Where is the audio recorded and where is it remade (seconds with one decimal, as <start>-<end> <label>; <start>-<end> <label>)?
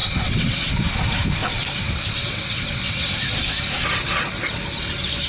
0.0-0.7 remade; 0.7-1.4 recorded; 1.4-3.6 remade; 3.6-5.3 recorded